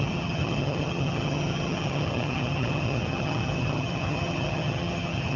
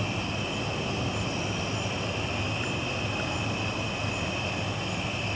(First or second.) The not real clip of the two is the first